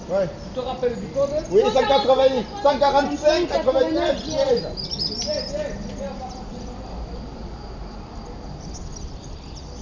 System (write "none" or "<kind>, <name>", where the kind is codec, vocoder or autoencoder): none